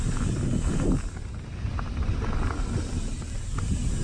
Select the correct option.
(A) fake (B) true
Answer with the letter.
B